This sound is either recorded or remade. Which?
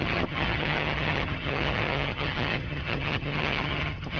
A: remade